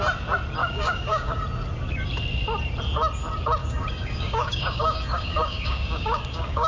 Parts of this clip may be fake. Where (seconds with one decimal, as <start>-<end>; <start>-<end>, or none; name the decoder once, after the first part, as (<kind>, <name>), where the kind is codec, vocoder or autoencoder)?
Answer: 0.6-1.4 (codec, DAC); 3.6-6.7